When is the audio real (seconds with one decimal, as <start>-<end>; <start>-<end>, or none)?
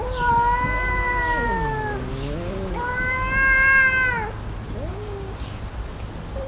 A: 0.0-2.1; 2.9-4.9; 5.6-6.5